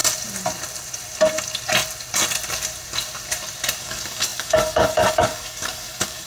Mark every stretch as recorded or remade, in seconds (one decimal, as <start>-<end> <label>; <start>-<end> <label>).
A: 0.0-3.8 recorded; 3.8-6.3 remade